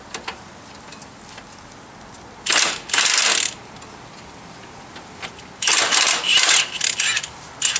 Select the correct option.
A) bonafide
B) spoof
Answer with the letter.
A